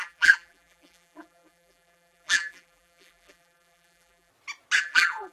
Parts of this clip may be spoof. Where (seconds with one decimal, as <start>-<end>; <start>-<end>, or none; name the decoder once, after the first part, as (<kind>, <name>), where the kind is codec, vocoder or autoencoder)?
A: 0.0-4.3 (vocoder, BigVGAN v2); 4.8-5.3